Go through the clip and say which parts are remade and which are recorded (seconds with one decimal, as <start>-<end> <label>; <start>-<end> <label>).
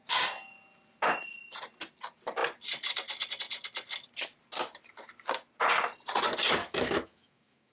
0.0-6.6 recorded; 6.6-7.7 remade